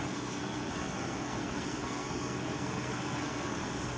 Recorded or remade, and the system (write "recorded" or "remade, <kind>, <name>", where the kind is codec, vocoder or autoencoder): remade, codec, SNAC